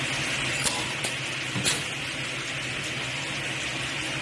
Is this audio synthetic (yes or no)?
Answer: no